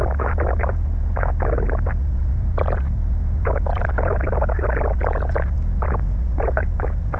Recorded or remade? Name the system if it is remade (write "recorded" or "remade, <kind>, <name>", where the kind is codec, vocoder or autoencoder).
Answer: recorded